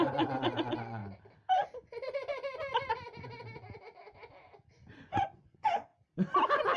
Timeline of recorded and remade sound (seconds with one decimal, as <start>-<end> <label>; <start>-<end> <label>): 0.0-1.0 remade; 1.0-5.0 recorded; 5.0-5.9 remade; 5.9-6.8 recorded